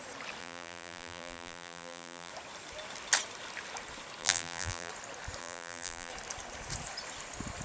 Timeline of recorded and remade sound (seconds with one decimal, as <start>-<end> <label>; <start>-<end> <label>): 0.0-0.4 recorded; 0.4-2.3 remade; 2.3-4.2 recorded; 4.2-4.9 remade; 4.9-5.4 recorded; 5.4-6.1 remade; 6.1-7.6 recorded